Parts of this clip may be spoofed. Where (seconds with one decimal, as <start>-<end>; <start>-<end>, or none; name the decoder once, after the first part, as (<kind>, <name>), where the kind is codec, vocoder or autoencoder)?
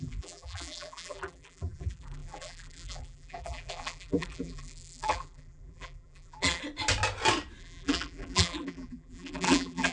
0.0-6.6 (vocoder, BigVGAN v2); 7.6-9.9